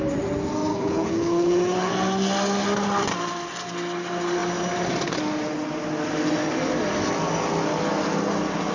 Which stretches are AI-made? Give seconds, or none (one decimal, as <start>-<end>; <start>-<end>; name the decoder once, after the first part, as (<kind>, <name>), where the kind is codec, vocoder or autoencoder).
0.7-1.9 (codec, HILCodec)